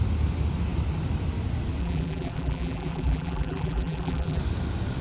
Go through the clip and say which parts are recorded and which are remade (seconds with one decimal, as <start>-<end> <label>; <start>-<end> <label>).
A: 0.0-1.8 recorded; 1.8-4.4 remade; 4.4-5.0 recorded